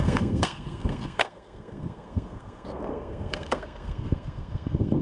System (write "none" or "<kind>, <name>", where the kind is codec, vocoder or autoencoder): codec, SNAC